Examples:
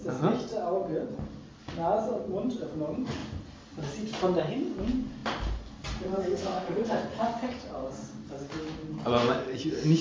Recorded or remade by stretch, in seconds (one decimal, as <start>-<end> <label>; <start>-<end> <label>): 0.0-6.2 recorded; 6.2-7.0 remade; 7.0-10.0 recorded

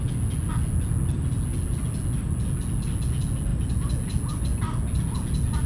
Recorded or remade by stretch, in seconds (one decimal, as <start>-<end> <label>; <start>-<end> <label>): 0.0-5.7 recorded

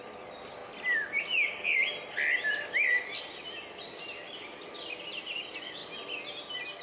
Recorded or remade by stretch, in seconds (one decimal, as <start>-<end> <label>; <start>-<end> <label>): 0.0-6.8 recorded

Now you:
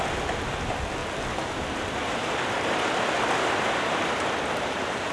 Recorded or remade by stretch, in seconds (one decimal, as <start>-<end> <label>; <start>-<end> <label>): 0.0-5.1 recorded

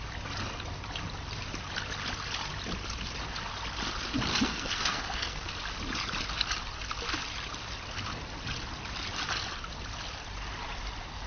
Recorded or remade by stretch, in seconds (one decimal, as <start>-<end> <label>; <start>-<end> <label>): 0.0-4.3 recorded; 4.3-5.5 remade; 5.5-11.3 recorded

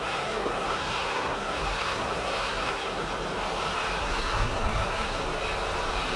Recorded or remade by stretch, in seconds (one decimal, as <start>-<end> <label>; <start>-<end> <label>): 0.0-3.1 remade; 3.1-4.0 recorded; 4.0-5.2 remade; 5.2-6.2 recorded